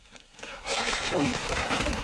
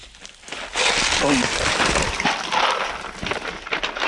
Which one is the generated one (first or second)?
first